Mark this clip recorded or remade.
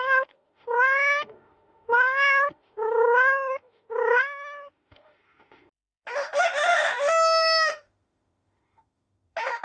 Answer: remade